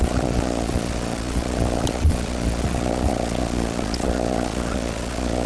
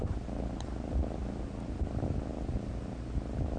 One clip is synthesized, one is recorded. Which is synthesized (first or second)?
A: first